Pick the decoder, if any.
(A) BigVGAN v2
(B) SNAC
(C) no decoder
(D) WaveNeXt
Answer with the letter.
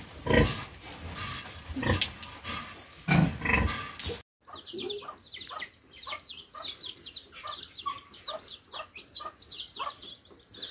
C